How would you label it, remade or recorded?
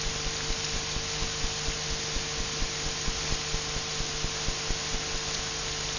recorded